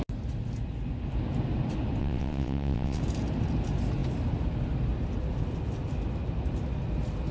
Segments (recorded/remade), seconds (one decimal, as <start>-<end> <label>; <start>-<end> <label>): 0.0-2.0 recorded; 2.0-3.0 remade; 3.0-7.3 recorded